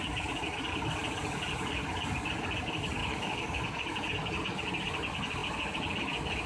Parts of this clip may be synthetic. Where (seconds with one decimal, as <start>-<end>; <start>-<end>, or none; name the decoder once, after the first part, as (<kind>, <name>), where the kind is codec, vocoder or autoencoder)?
3.0-3.6 (codec, DAC)